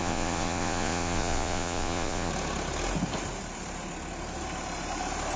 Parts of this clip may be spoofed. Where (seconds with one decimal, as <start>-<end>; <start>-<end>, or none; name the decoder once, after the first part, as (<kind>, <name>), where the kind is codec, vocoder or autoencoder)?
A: 0.0-2.3 (vocoder, Vocos)